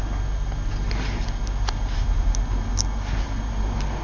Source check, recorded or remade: recorded